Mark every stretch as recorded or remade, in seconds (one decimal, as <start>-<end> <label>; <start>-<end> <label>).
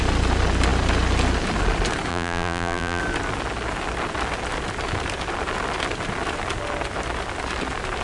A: 0.0-2.1 recorded; 2.1-3.0 remade; 3.0-8.0 recorded